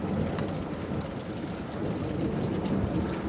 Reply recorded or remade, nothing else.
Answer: recorded